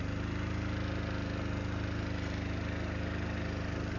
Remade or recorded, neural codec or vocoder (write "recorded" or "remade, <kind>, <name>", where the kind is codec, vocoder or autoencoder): recorded